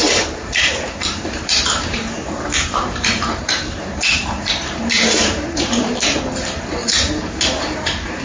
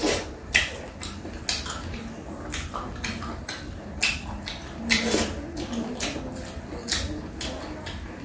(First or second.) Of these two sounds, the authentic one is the second